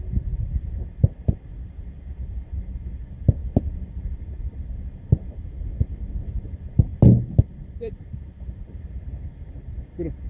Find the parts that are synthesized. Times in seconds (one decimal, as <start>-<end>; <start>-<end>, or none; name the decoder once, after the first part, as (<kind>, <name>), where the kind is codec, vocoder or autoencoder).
none